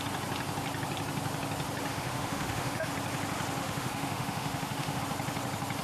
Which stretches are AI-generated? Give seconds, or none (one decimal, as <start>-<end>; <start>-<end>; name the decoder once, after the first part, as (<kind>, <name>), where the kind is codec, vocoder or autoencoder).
1.9-2.9 (autoencoder, DAC-VAE); 3.6-5.0